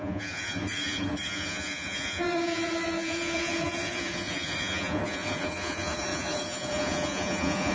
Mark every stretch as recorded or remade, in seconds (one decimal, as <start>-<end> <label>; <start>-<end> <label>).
0.0-7.7 remade